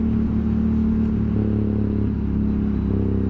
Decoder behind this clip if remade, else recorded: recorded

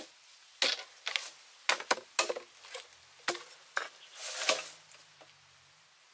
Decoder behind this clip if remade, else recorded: recorded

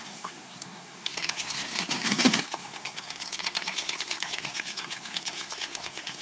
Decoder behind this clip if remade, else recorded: remade, codec, SNAC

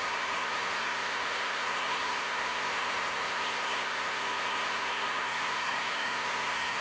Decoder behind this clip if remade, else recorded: remade, codec, SNAC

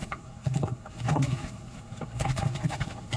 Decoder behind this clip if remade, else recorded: remade, codec, SNAC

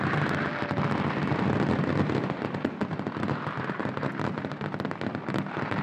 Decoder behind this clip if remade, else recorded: recorded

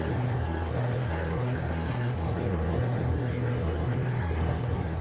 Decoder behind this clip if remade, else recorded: remade, codec, SNAC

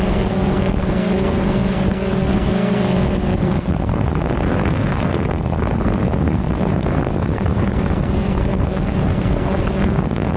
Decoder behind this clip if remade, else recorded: remade, codec, SNAC